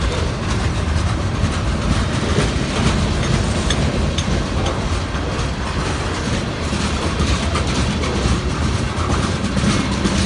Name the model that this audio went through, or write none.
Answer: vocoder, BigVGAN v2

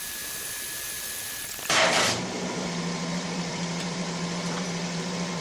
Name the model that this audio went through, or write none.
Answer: vocoder, BigVGAN v2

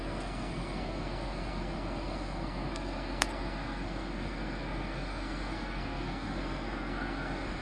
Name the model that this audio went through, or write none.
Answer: codec, SNAC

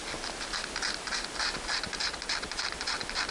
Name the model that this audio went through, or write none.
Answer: none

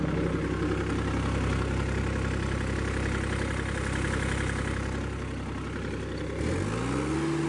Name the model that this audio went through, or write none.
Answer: none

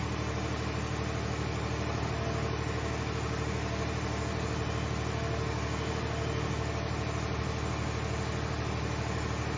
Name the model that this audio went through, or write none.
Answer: none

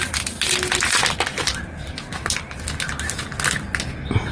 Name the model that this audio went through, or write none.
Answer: none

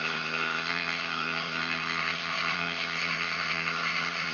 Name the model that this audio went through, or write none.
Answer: codec, SNAC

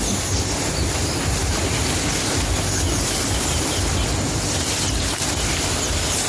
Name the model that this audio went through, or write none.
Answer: none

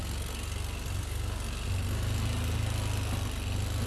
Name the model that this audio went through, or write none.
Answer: none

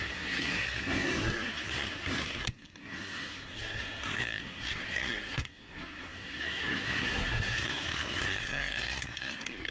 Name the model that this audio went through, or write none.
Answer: codec, SNAC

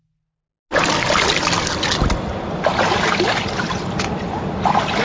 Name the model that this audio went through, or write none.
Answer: none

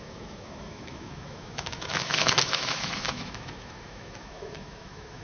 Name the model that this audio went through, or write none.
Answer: autoencoder, DAC-VAE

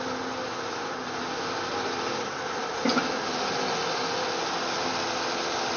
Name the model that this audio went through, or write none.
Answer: none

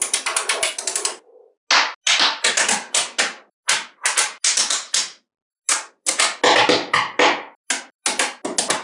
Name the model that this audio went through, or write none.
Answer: none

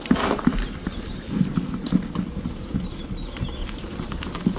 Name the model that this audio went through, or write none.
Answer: none